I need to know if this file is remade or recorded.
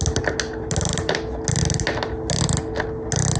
recorded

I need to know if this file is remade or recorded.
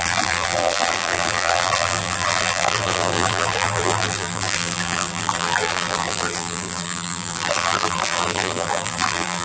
remade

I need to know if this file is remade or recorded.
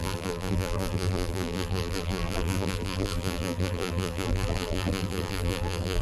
remade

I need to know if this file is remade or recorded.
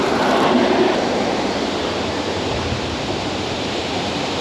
remade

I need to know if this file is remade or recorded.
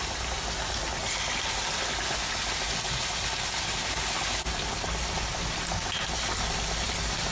recorded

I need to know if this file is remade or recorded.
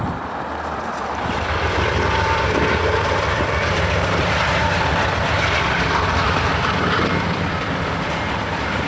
remade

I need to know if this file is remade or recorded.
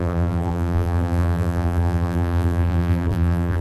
remade